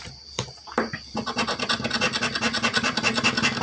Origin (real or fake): real